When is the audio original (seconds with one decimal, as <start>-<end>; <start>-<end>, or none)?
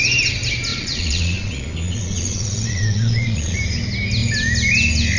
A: 0.0-0.7; 3.6-5.2